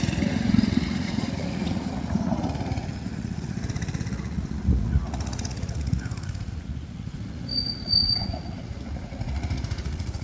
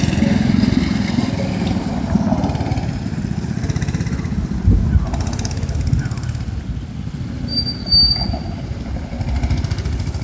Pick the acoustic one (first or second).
second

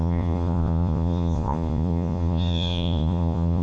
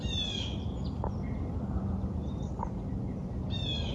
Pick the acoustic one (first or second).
second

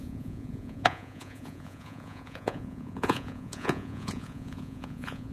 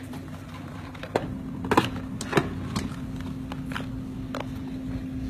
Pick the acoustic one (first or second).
second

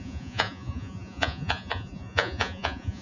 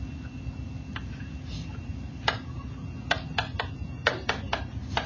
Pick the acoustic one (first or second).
second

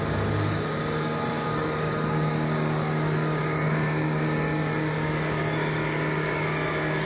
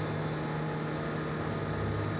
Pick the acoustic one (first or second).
second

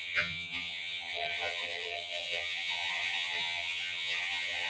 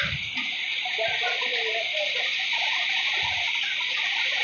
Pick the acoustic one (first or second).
second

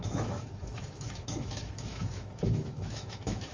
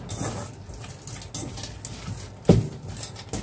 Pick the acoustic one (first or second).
second